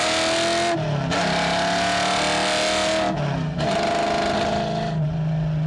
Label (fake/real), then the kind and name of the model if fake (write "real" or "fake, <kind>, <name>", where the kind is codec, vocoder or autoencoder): real